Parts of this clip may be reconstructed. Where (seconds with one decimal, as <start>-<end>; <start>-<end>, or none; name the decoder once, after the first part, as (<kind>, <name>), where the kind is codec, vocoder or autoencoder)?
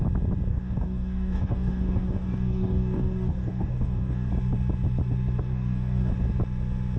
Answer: 0.5-4.3 (codec, DAC); 5.5-6.1